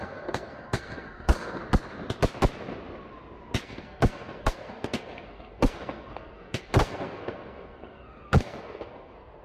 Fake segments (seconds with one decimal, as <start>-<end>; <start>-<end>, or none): 0.0-1.6; 3.6-9.4